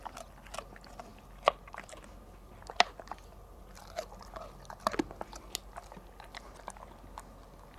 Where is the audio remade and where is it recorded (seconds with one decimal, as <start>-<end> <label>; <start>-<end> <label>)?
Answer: 0.0-7.8 recorded